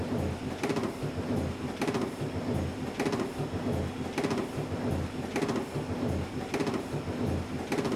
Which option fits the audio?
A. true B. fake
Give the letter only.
A